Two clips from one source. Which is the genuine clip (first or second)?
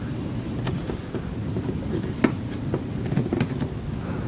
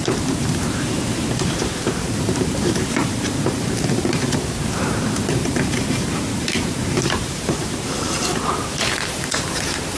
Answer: first